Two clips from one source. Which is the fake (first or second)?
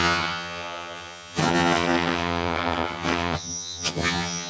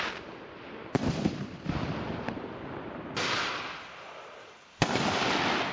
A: first